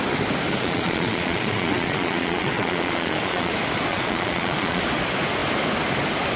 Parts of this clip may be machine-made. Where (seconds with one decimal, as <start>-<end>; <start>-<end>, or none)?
0.5-3.5; 3.9-4.8